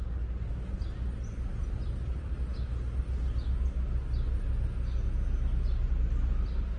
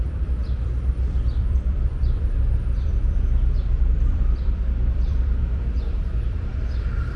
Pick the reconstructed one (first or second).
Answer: second